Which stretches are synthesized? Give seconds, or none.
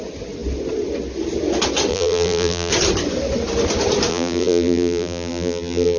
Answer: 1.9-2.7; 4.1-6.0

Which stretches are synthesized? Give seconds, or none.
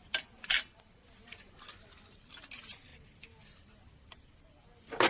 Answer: none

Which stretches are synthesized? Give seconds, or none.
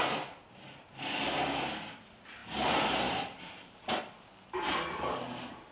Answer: 2.4-4.0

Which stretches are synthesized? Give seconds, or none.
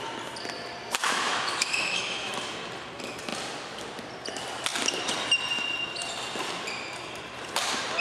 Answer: 1.0-2.3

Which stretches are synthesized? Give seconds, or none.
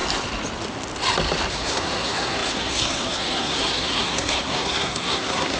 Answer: 1.5-5.6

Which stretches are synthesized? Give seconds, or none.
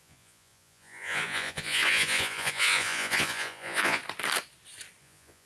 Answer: 0.0-4.0; 5.0-5.5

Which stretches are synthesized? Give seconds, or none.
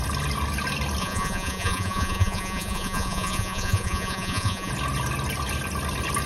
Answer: 1.0-4.7